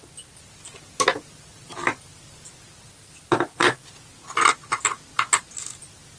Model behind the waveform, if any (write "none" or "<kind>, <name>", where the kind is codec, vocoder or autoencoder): none